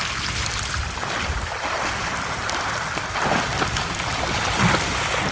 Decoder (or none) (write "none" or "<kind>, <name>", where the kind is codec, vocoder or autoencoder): none